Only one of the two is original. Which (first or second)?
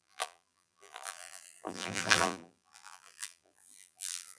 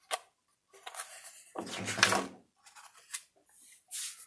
second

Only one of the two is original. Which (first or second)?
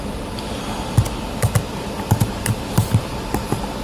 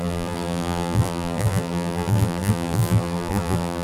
first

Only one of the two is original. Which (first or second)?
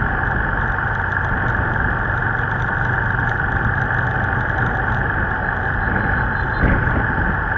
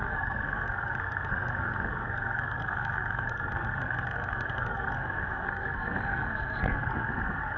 first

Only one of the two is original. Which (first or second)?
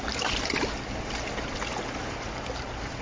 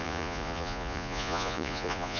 first